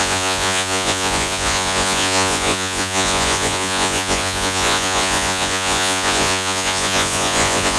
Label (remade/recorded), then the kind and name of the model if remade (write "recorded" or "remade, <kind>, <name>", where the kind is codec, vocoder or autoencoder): remade, vocoder, Vocos